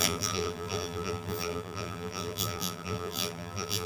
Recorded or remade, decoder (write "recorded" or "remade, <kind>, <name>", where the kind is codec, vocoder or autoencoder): remade, vocoder, BigVGAN v2